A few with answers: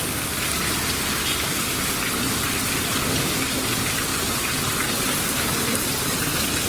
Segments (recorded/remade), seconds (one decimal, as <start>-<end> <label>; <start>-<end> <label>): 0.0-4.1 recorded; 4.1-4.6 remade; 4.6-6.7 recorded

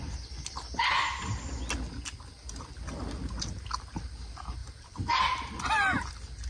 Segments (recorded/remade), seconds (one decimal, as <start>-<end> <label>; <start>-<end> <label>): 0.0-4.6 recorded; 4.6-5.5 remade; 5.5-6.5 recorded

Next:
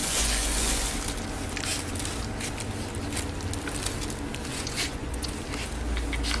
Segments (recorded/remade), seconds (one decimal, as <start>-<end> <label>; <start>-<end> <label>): 0.0-0.9 remade; 0.9-4.5 recorded; 4.5-5.3 remade; 5.3-6.4 recorded

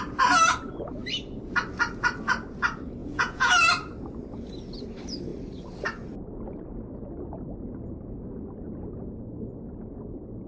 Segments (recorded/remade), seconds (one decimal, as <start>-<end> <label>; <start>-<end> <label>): 0.0-3.0 recorded; 3.0-3.5 remade; 3.5-10.5 recorded

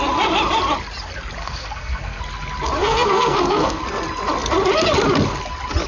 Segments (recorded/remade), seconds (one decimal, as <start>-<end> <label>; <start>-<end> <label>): 0.0-1.4 recorded; 1.4-2.2 remade; 2.2-2.8 recorded; 2.8-3.8 remade; 3.8-5.9 recorded

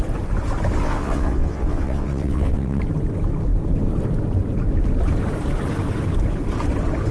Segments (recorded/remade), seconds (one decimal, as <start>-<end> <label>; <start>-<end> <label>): 0.0-0.8 recorded; 0.8-2.8 remade; 2.8-7.1 recorded